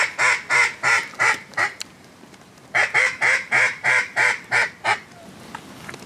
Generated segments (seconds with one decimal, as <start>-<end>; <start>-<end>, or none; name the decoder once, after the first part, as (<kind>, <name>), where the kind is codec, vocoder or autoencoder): 1.0-4.7 (vocoder, BigVGAN v2)